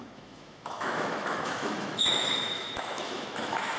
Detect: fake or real fake